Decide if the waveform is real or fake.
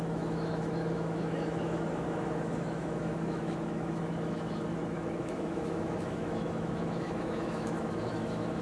fake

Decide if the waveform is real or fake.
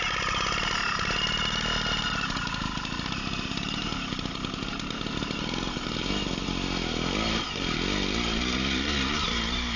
real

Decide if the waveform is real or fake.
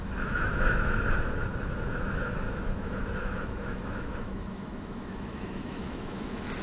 fake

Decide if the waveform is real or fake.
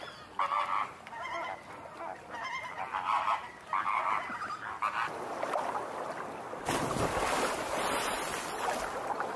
real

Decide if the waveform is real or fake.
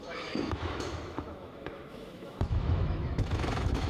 fake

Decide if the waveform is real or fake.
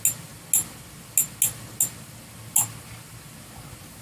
real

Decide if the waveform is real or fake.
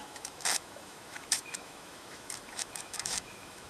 fake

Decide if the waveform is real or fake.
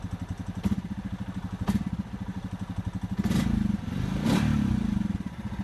real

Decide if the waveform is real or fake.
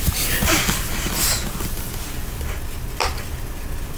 real